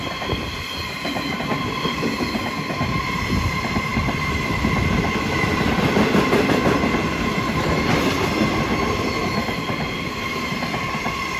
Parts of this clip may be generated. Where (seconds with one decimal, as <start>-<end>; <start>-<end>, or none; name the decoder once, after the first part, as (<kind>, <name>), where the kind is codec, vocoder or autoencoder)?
3.9-6.5 (vocoder, BigVGAN v2); 9.2-10.3